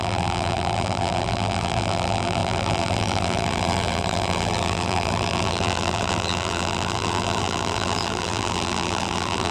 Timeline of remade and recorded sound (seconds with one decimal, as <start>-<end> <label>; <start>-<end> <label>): 0.0-9.5 remade